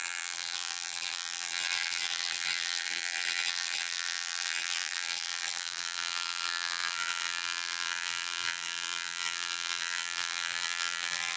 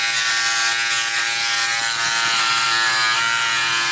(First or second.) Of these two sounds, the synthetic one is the first